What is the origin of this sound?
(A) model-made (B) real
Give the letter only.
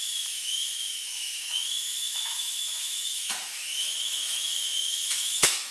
A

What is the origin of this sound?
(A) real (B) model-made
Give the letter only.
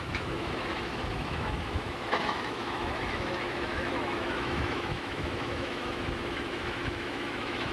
B